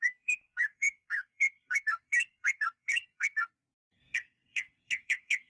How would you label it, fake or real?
fake